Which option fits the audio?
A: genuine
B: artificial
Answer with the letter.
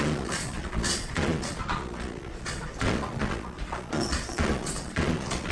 B